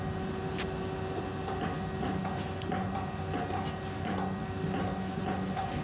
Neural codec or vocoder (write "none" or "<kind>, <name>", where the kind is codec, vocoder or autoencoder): none